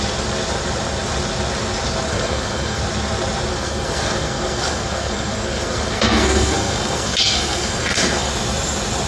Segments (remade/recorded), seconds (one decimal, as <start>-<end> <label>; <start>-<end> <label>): 0.0-2.1 recorded; 2.1-2.8 remade; 2.8-3.5 recorded; 3.5-8.3 remade; 8.3-9.1 recorded